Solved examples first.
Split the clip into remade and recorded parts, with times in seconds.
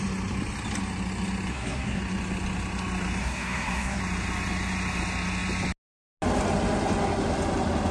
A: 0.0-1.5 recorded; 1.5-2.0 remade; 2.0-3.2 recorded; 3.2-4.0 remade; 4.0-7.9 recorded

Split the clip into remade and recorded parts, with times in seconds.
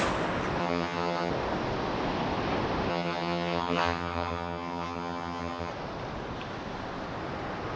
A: 0.0-0.6 recorded; 0.6-1.3 remade; 1.3-2.9 recorded; 2.9-5.7 remade; 5.7-7.8 recorded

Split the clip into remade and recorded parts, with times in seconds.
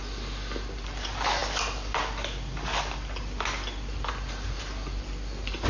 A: 0.0-5.7 recorded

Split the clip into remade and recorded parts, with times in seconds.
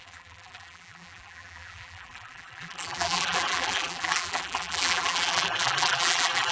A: 0.0-6.5 remade